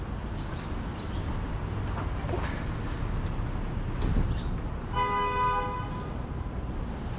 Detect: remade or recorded recorded